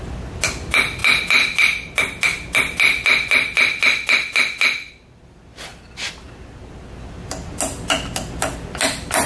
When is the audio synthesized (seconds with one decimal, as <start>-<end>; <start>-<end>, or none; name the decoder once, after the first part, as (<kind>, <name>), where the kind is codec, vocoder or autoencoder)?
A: none